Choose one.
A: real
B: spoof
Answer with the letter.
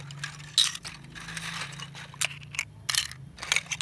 A